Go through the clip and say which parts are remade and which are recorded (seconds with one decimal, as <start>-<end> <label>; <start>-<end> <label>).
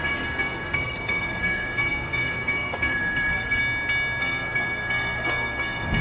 0.0-3.6 remade; 3.6-4.2 recorded; 4.2-6.0 remade